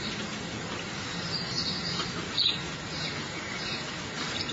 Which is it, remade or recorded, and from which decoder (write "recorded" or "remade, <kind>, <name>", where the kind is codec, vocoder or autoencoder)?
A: recorded